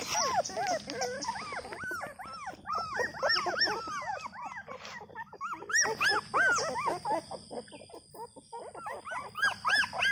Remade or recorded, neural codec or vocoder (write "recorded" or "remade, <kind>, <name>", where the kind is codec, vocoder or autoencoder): recorded